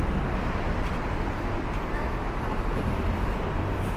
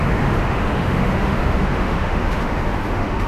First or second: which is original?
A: first